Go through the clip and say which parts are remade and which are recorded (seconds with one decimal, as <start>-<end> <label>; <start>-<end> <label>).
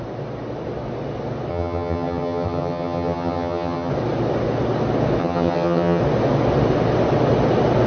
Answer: 0.0-1.5 recorded; 1.5-3.9 remade; 3.9-5.2 recorded; 5.2-6.0 remade; 6.0-7.9 recorded